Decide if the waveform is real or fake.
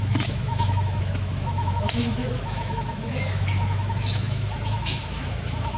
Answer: fake